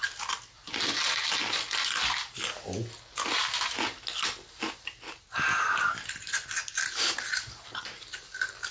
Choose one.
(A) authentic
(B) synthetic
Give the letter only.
A